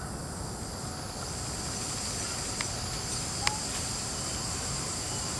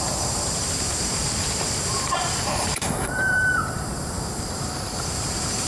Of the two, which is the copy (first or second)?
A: second